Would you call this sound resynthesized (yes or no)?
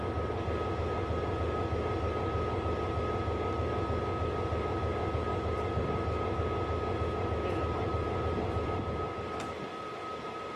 no